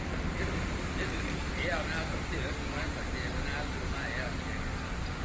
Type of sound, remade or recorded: recorded